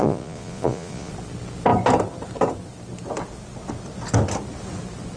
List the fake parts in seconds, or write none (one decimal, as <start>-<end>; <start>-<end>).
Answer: 0.0-1.1